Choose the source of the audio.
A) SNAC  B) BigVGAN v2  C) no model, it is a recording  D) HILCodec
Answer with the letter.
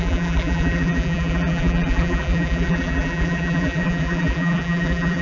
B